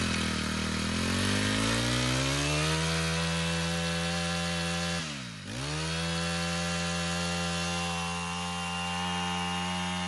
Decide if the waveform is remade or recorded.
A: recorded